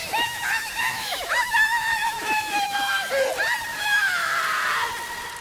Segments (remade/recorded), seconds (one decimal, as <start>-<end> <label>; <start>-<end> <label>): 0.0-3.1 remade; 3.1-3.7 recorded; 3.7-4.3 remade; 4.3-5.4 recorded